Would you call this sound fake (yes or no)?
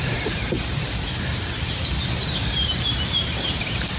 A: yes